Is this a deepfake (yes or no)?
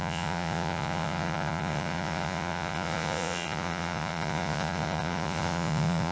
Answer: yes